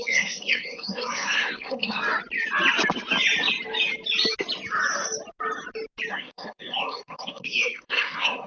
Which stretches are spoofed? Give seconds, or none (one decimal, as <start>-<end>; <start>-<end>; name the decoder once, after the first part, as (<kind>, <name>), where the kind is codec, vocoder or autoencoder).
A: 0.0-2.0 (codec, SNAC); 6.1-8.5